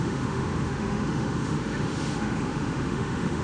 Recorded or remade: remade